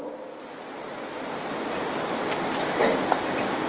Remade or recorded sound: recorded